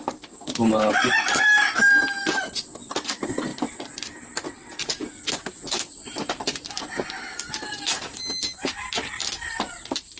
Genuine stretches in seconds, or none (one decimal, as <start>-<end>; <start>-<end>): 0.0-10.2